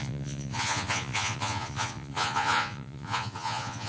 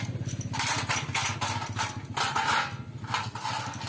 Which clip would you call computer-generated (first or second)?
first